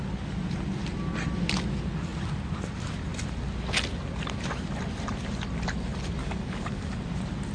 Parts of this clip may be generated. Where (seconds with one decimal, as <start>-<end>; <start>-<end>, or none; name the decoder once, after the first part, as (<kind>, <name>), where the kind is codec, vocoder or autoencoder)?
6.2-7.0 (codec, DAC)